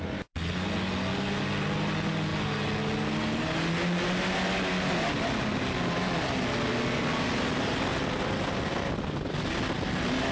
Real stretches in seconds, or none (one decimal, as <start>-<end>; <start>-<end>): 0.0-10.3